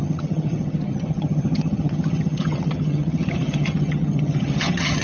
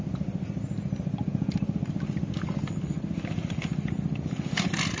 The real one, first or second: second